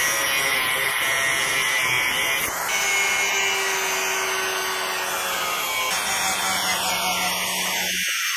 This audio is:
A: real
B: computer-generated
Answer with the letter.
A